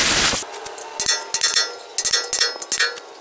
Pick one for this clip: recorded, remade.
recorded